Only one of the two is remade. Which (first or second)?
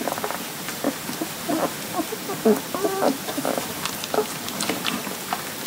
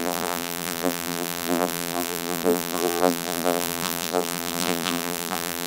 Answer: second